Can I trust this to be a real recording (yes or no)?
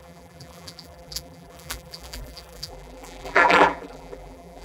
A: no